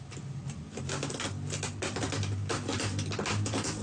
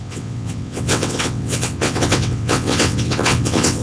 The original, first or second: first